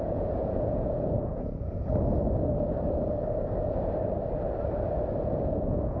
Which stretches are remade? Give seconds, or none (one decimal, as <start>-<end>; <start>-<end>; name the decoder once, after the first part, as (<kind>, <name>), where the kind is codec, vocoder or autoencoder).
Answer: 0.0-1.9 (vocoder, Vocos); 5.5-6.0

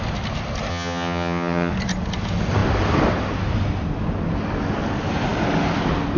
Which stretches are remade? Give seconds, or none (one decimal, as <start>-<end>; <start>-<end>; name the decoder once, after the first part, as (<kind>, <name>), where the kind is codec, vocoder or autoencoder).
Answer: 0.7-1.7 (vocoder, HiFi-GAN)

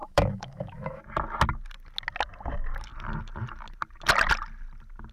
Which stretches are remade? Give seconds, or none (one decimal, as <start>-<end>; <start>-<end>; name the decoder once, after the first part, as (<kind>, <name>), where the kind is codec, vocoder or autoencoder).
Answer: 0.0-1.0 (autoencoder, DAC-VAE)

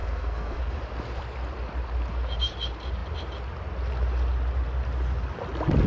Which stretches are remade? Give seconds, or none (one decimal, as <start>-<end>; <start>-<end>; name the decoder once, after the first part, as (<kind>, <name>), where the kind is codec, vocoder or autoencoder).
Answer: 0.0-0.6 (codec, SNAC)

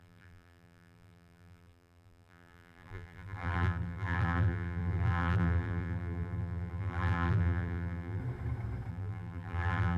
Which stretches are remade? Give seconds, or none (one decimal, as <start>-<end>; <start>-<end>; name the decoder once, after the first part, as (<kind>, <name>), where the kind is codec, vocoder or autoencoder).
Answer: 0.0-8.2 (vocoder, BigVGAN v2); 8.9-10.0